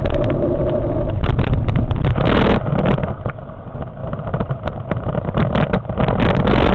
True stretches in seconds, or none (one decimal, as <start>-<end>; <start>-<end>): 0.0-4.0; 6.2-6.7